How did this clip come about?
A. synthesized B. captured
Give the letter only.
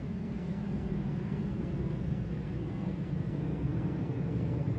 A